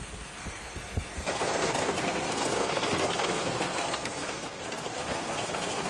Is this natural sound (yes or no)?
no